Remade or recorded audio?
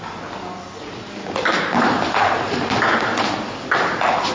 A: recorded